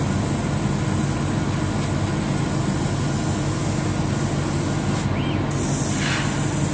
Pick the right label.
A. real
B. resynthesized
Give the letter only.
A